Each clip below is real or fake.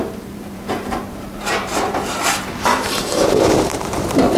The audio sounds fake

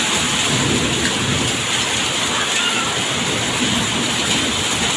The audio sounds real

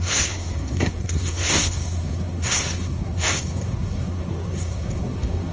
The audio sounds fake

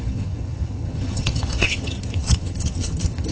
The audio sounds fake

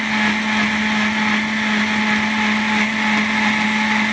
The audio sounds real